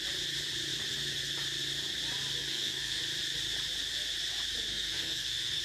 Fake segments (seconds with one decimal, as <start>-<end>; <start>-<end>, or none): 2.4-3.0; 4.7-5.6